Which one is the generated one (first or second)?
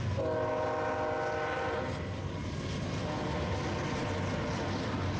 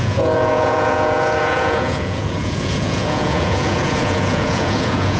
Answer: second